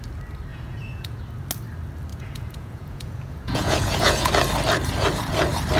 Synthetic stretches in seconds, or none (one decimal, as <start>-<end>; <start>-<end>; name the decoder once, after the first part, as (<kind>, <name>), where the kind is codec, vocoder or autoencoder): 0.5-1.2 (vocoder, Vocos); 2.1-4.3